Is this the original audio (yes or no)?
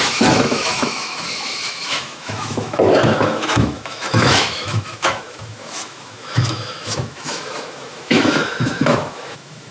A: no